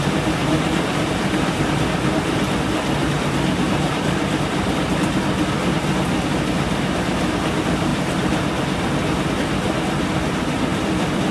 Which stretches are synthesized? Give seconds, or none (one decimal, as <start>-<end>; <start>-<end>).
0.4-1.6; 3.0-4.8; 10.7-11.3